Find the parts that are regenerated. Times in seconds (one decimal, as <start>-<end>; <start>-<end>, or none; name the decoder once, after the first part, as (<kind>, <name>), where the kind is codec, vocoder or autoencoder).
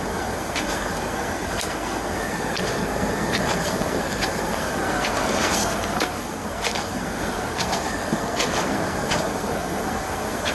0.0-10.5 (codec, SNAC)